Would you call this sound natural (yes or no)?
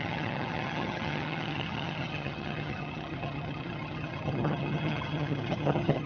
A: no